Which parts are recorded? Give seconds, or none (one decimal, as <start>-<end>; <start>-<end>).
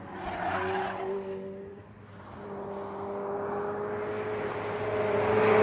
0.0-5.6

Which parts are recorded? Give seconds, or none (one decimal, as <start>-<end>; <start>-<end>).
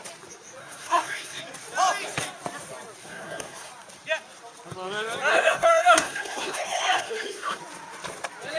0.0-0.6; 1.4-3.0; 3.7-5.3; 7.6-8.6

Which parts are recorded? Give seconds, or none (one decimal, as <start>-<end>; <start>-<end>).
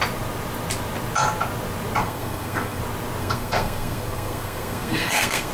0.0-2.0; 2.8-3.2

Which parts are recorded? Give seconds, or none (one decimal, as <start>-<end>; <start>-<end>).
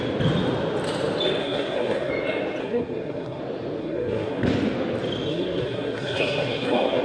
0.0-1.4; 2.1-2.6; 3.4-3.8; 4.4-5.3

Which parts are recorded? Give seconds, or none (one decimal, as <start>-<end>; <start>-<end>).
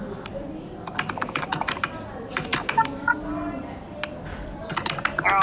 0.0-5.4